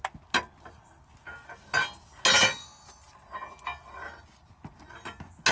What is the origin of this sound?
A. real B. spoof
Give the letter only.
A